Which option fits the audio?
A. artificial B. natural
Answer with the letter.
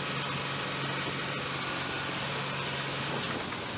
B